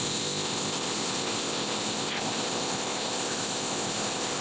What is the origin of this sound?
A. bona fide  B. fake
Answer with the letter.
B